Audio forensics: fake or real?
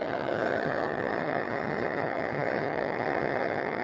fake